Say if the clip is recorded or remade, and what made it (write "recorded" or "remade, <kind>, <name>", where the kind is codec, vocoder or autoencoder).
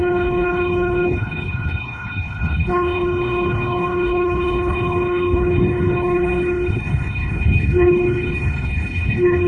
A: remade, codec, HILCodec